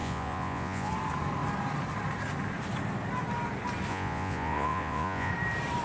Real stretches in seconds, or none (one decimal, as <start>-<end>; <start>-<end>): 0.9-3.9; 5.3-5.8